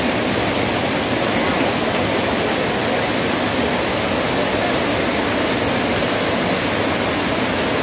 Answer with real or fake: real